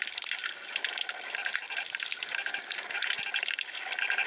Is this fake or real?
real